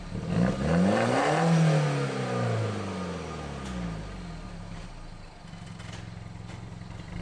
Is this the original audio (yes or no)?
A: yes